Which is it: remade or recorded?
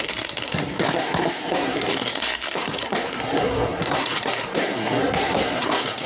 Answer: remade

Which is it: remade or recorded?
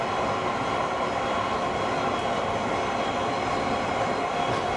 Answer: recorded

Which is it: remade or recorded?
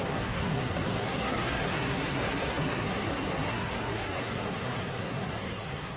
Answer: remade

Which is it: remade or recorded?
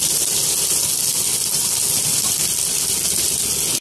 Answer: recorded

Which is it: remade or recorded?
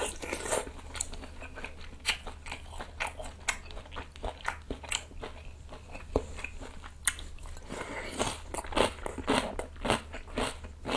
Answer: recorded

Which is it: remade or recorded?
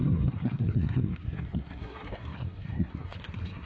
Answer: remade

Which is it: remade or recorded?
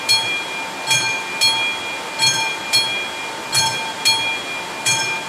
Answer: recorded